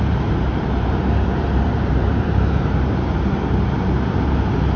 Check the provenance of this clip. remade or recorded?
remade